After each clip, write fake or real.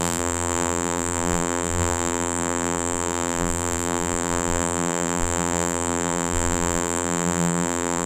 fake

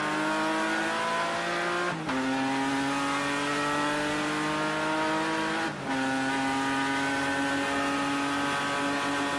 real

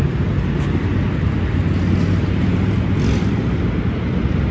real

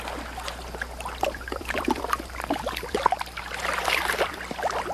fake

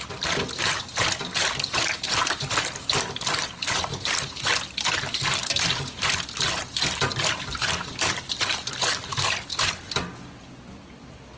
real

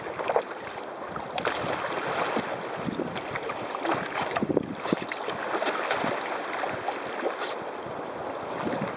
real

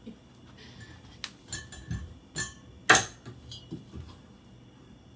real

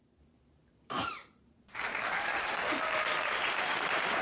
fake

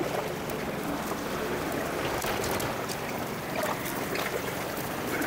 real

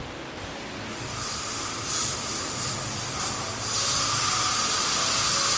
real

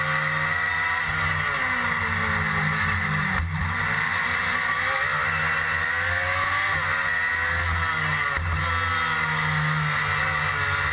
real